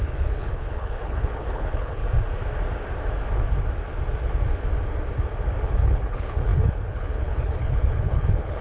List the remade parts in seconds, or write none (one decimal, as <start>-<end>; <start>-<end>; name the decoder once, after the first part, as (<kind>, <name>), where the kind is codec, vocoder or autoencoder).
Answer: 0.0-2.0 (codec, HILCodec); 5.6-8.6